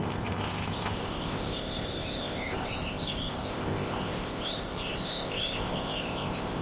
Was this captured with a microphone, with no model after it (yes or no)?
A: no